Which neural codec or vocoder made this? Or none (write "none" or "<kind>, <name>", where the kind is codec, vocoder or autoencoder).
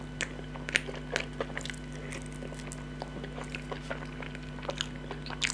none